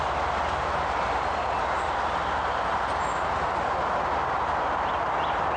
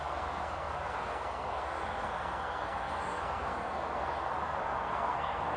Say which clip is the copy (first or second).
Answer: second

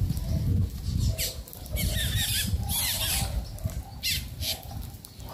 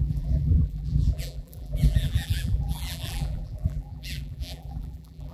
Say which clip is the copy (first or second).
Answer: second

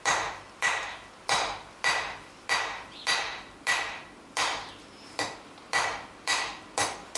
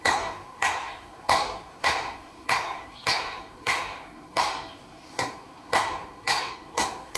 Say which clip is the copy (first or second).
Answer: second